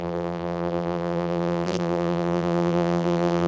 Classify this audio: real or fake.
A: fake